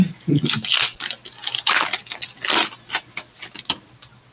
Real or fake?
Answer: real